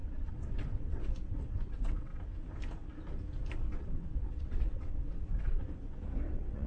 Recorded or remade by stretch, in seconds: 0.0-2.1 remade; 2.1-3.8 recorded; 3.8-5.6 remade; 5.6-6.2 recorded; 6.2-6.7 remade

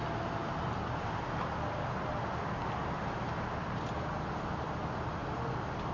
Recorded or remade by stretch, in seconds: 0.0-5.9 recorded

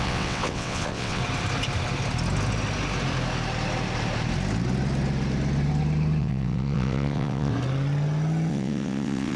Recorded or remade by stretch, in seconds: 0.0-1.2 remade; 1.2-6.2 recorded; 6.2-7.5 remade; 7.5-8.5 recorded; 8.5-9.4 remade

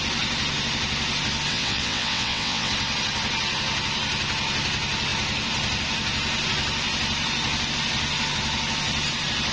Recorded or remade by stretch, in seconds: 0.0-1.5 recorded; 1.5-2.7 remade; 2.7-9.5 recorded

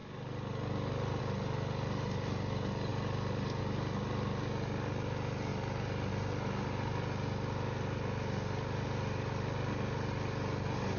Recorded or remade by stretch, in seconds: 0.0-11.0 recorded

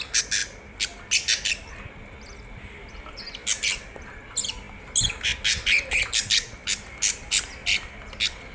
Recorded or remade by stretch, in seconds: 0.0-8.5 recorded

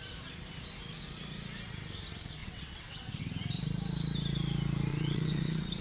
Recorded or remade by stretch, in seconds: 0.0-2.4 recorded; 2.4-3.2 remade; 3.2-4.9 recorded; 4.9-5.8 remade